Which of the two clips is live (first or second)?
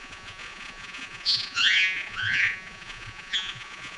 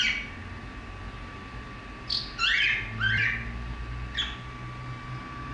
second